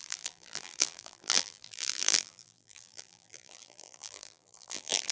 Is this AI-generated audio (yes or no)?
yes